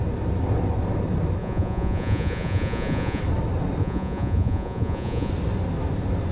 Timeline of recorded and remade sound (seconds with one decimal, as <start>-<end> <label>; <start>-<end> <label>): 0.0-1.4 recorded; 1.4-3.2 remade; 3.2-3.8 recorded; 3.8-5.3 remade; 5.3-6.3 recorded